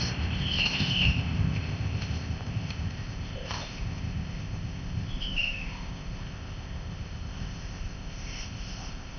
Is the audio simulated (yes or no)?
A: yes